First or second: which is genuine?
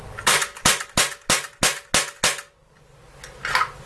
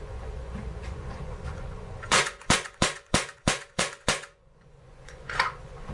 first